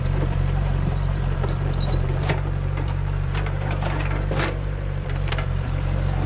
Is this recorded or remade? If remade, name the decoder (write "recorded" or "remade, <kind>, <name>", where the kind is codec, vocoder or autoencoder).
remade, vocoder, BigVGAN v2